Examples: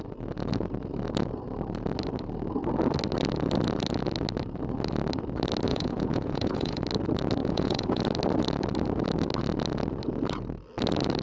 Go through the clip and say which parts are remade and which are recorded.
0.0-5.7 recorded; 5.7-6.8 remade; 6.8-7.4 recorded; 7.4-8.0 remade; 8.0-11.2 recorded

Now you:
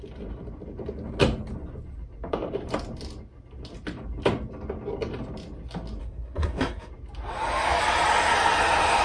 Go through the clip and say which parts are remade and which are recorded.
0.0-6.0 recorded; 6.0-6.9 remade; 6.9-9.0 recorded